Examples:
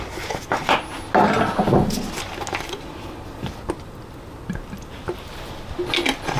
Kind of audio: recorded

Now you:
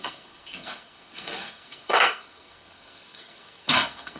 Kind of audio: remade